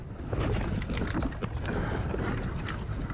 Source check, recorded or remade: recorded